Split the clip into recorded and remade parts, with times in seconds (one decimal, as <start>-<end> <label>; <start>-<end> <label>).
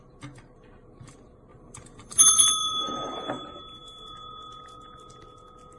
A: 0.0-1.5 recorded; 1.5-3.1 remade; 3.1-5.8 recorded